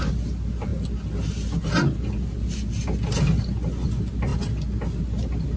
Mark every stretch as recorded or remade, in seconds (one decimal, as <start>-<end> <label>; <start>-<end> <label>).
0.0-5.6 recorded